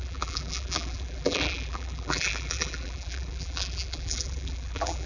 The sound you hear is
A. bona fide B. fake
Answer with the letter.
B